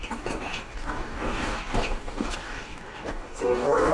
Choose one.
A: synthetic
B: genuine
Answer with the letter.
A